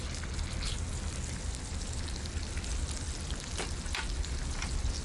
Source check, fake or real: real